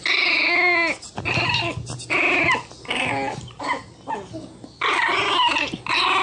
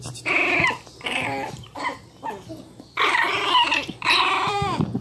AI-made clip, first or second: second